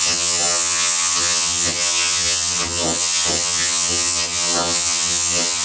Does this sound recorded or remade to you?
remade